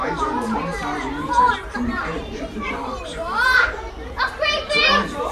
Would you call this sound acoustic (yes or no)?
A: no